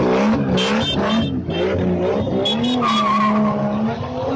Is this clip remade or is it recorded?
recorded